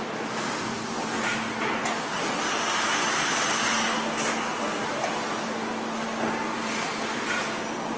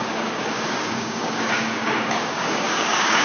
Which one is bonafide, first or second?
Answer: first